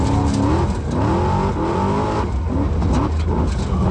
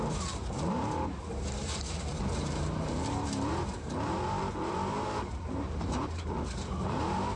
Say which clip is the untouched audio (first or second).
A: first